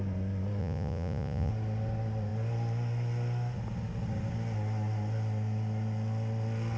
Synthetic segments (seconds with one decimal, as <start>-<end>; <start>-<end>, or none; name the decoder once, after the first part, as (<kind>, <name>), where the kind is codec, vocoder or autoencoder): 0.6-1.5 (vocoder, Vocos)